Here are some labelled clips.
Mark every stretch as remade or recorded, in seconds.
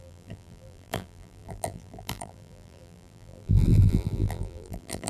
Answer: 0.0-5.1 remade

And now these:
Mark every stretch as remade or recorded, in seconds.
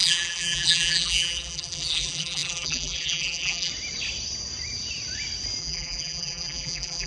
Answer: 0.0-3.7 remade; 3.7-5.6 recorded; 5.6-7.1 remade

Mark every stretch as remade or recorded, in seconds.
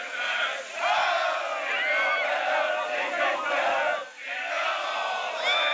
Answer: 0.0-5.7 recorded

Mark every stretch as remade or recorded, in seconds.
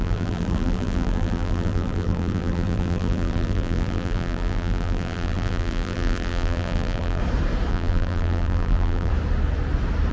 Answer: 0.0-7.2 remade; 7.2-7.7 recorded; 7.7-9.1 remade; 9.1-10.1 recorded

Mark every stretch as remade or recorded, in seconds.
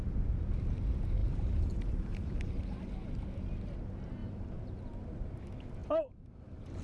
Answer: 0.0-1.2 recorded; 1.2-2.9 remade; 2.9-4.2 recorded; 4.2-4.8 remade; 4.8-5.8 recorded; 5.8-6.8 remade